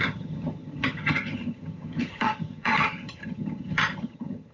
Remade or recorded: remade